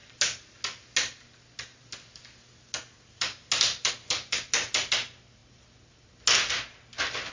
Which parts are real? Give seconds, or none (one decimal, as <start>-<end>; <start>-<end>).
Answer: 0.0-7.3

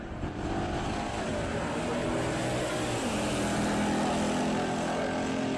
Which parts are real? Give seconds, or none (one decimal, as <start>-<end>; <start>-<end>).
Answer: 0.0-5.6